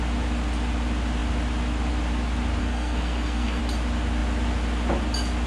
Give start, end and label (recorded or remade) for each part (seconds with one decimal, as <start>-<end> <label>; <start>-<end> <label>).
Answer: 0.0-2.6 recorded; 2.6-3.6 remade; 3.6-5.5 recorded

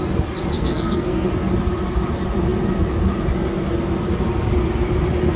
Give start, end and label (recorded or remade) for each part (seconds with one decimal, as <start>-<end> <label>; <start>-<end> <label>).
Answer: 0.0-0.5 recorded; 0.5-1.3 remade; 1.3-5.4 recorded